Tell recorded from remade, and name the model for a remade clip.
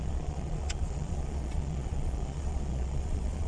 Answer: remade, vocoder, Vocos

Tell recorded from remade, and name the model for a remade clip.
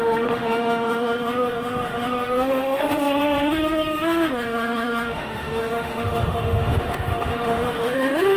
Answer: remade, autoencoder, DAC-VAE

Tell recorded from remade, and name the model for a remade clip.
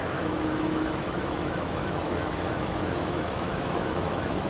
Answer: remade, autoencoder, DAC-VAE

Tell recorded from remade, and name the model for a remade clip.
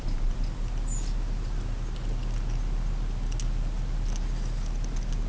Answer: recorded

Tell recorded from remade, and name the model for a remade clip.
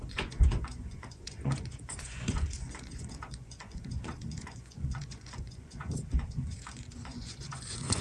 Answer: remade, vocoder, Vocos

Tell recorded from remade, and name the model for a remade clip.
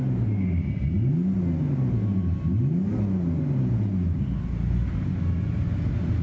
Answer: recorded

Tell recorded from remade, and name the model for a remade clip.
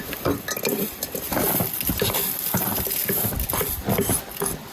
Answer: recorded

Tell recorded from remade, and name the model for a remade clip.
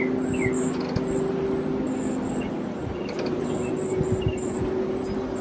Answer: recorded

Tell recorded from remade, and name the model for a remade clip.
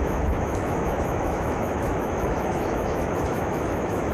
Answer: remade, autoencoder, DAC-VAE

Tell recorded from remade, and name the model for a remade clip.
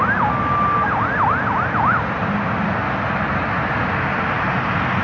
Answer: recorded